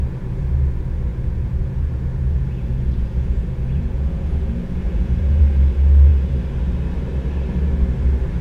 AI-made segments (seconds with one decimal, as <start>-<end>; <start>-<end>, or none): 1.1-5.4